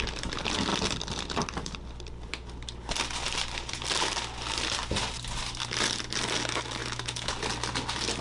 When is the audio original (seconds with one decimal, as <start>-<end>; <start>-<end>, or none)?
0.0-6.8; 7.3-8.2